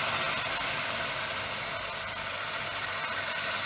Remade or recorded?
recorded